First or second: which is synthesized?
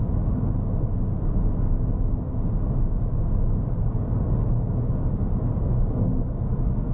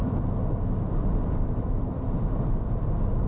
second